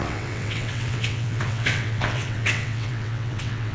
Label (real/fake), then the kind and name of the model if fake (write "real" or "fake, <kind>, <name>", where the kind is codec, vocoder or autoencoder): fake, vocoder, WaveNeXt